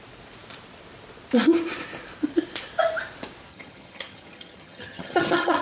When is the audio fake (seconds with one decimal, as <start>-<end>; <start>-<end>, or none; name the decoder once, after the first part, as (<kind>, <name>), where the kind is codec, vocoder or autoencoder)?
3.5-5.6 (vocoder, HiFi-GAN)